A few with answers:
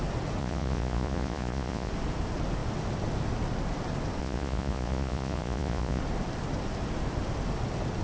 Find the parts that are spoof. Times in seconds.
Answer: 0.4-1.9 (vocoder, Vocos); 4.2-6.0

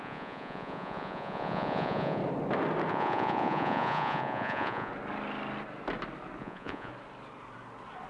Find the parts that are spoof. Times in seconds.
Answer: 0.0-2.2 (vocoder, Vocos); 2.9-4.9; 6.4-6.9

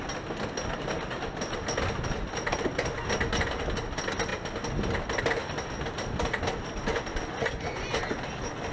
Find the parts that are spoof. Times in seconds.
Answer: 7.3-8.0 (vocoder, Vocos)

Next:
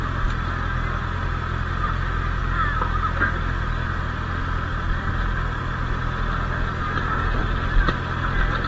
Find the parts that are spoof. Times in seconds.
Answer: none